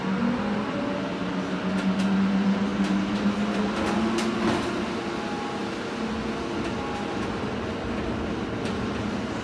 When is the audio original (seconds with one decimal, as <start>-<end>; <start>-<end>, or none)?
0.0-9.4